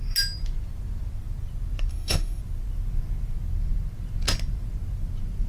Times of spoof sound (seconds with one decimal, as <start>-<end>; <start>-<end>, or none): 1.9-2.4